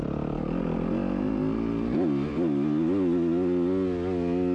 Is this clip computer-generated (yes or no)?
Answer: no